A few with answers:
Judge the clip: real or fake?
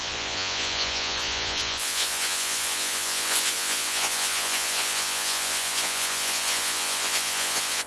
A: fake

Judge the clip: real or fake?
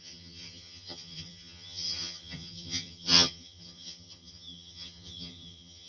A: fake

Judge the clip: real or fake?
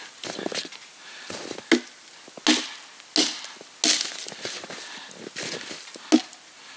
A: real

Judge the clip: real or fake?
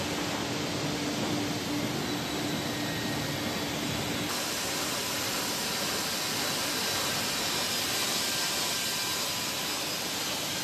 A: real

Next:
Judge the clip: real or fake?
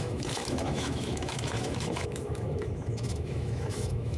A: fake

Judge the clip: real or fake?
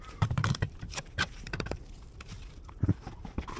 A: fake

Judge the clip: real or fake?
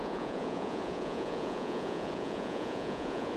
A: fake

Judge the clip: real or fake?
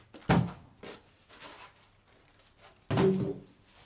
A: real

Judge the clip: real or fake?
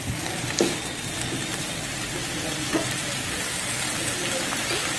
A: real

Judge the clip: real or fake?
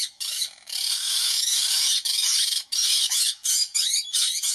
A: fake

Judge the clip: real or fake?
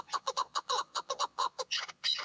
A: fake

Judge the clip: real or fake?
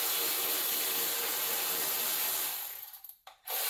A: fake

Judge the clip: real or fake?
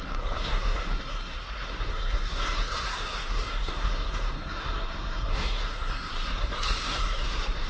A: fake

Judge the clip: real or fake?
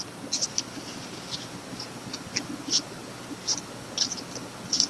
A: real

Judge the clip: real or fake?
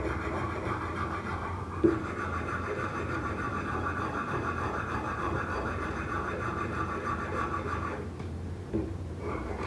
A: fake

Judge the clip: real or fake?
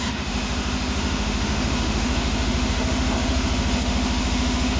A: fake